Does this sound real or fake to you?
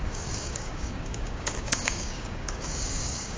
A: fake